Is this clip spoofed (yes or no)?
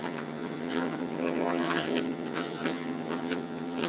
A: yes